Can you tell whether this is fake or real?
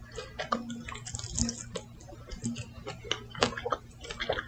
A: real